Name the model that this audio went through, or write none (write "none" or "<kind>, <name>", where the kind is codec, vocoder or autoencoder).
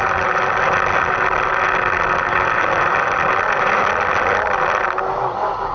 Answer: none